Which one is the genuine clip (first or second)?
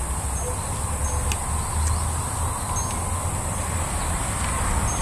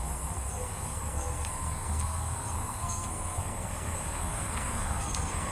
first